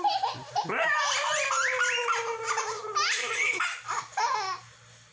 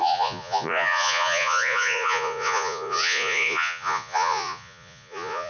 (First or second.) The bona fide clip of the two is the first